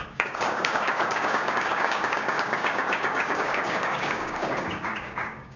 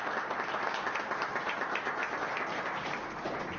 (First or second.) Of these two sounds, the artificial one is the first